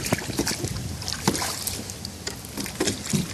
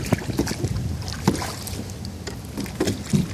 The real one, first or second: second